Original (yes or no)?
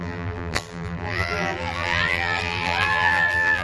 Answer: no